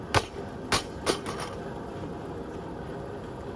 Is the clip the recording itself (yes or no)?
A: yes